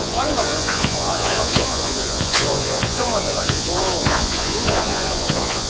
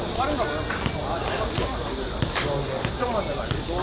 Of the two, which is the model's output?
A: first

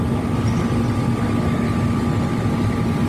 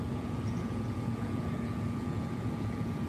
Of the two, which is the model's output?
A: second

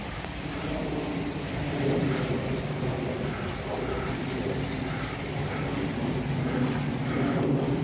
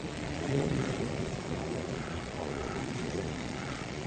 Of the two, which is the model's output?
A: second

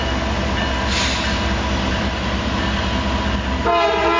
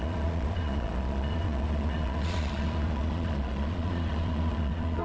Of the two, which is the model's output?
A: second